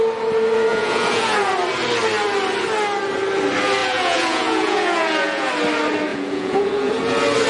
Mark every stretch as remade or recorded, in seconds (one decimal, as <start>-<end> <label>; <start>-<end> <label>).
0.0-0.7 recorded; 0.7-1.5 remade; 1.5-3.8 recorded; 3.8-5.5 remade; 5.5-6.1 recorded; 6.1-6.9 remade; 6.9-7.5 recorded